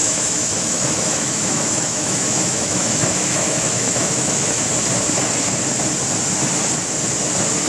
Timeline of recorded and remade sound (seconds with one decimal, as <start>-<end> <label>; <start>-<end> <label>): 0.0-4.6 remade; 4.6-7.7 recorded

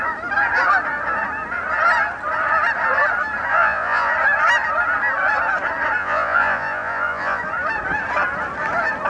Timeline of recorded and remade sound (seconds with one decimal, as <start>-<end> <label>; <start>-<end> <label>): 0.0-3.5 recorded; 3.5-4.1 remade; 4.1-6.0 recorded; 6.0-7.4 remade; 7.4-9.1 recorded